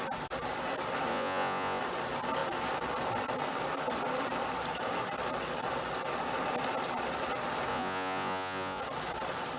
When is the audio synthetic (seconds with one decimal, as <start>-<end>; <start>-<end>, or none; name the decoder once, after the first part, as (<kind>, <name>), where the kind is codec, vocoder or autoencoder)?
1.1-1.8 (vocoder, Vocos); 7.7-8.8